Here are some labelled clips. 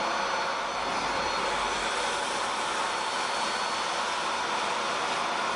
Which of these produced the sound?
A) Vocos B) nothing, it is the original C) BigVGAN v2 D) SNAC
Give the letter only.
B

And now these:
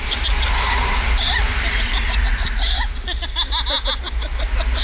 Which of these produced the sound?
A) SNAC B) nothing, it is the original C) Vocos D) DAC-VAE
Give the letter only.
B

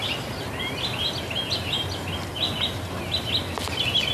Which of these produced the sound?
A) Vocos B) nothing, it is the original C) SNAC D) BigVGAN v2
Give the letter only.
B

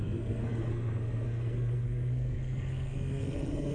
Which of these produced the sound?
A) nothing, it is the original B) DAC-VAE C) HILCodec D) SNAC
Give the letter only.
D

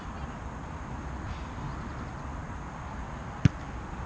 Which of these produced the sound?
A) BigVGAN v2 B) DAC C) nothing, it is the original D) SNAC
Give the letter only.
C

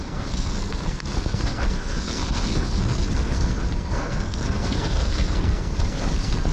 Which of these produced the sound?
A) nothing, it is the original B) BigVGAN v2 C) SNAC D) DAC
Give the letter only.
C